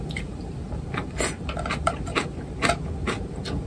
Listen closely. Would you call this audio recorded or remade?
remade